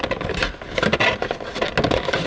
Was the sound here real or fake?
real